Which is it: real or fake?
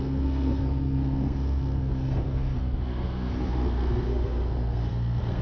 fake